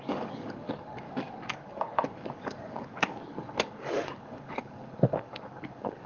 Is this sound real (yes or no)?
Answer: no